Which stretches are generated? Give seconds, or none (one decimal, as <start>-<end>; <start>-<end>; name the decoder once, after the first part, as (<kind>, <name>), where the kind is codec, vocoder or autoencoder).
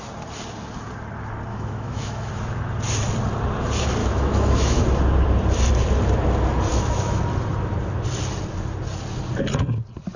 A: 1.5-2.3 (autoencoder, DAC-VAE); 4.0-4.8; 6.7-7.2